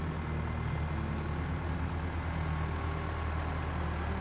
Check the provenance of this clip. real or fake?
real